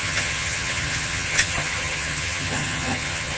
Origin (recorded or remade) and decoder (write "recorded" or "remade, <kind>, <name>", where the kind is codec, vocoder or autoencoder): remade, vocoder, HiFi-GAN